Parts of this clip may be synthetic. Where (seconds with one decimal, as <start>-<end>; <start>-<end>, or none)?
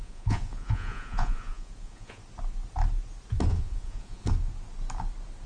0.0-2.2; 3.5-4.3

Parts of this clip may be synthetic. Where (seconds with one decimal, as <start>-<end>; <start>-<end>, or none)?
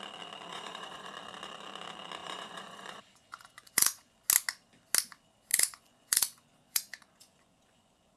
0.5-1.1; 2.2-4.2; 5.5-8.2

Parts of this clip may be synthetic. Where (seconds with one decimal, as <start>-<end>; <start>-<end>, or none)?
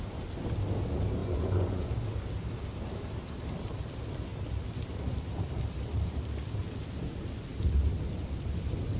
1.2-1.9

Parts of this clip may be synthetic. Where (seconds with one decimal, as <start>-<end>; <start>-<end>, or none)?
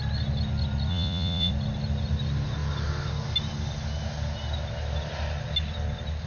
0.9-1.5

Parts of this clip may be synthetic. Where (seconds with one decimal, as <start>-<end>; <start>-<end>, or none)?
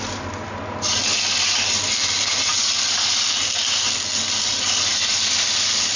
none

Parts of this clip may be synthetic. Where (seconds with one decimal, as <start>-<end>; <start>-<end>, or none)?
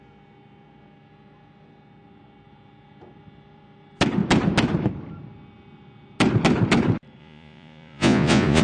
7.2-8.6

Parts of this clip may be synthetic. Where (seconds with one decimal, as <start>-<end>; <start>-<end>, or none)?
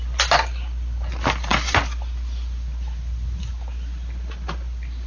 none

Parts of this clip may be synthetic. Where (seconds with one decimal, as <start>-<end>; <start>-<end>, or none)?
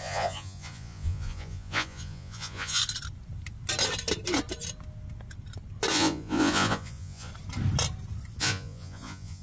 0.0-2.8; 5.9-7.3; 8.4-9.4